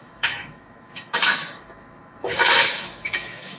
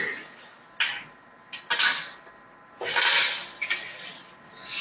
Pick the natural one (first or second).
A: second